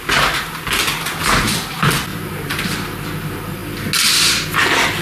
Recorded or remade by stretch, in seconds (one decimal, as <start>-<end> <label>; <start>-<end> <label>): 0.0-2.1 recorded; 2.1-2.6 remade; 2.6-5.0 recorded